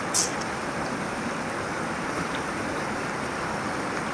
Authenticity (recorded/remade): recorded